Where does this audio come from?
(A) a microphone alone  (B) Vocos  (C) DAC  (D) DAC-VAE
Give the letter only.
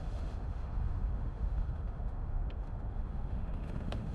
D